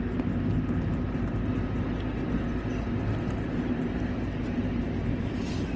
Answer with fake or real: real